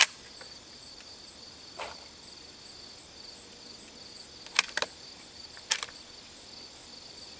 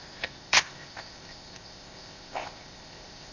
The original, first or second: first